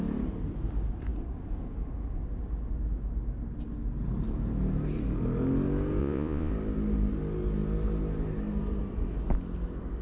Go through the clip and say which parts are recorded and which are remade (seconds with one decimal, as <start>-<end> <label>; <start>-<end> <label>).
0.0-6.0 recorded; 6.0-6.5 remade; 6.5-10.0 recorded